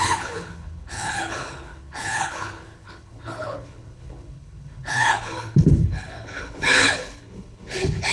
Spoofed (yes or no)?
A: yes